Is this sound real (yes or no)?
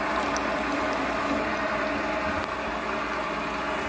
yes